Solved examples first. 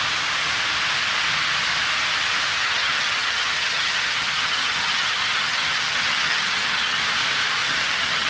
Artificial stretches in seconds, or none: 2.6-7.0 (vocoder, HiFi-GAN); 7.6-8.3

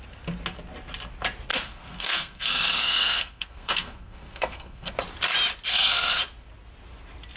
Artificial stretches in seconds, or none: 1.5-4.9 (codec, SNAC); 5.7-6.2